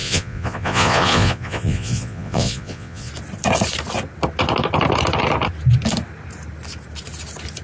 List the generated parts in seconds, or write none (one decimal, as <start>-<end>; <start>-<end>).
0.0-3.1